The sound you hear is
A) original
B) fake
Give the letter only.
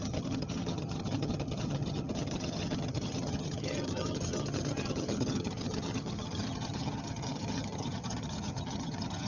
B